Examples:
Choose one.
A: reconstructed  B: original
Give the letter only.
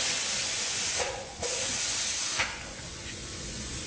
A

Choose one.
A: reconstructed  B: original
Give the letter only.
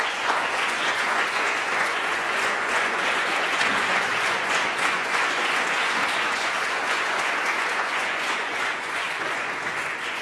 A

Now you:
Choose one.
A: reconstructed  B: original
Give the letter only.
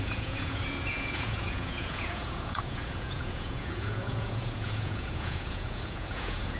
A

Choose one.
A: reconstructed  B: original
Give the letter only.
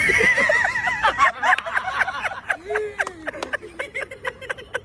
B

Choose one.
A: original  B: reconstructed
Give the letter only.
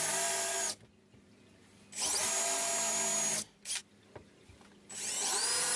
A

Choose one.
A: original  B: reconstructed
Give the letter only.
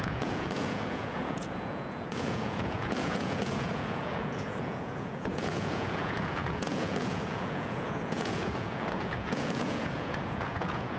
B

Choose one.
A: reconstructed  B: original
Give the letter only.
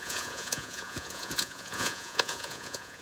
A